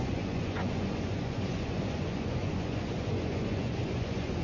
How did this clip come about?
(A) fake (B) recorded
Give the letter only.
A